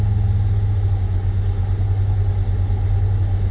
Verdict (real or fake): real